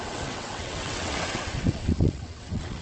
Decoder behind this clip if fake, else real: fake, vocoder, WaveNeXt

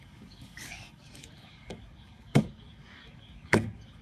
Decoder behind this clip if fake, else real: fake, codec, DAC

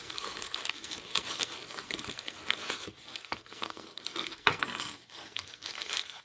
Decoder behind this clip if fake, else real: fake, codec, SNAC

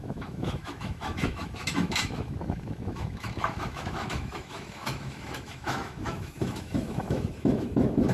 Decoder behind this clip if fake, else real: fake, autoencoder, DAC-VAE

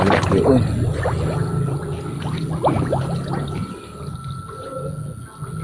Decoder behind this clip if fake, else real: real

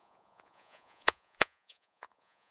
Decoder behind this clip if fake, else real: fake, vocoder, Vocos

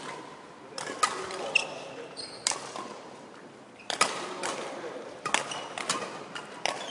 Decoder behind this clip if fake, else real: fake, vocoder, BigVGAN v2